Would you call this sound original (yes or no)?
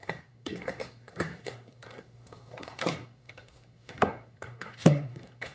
no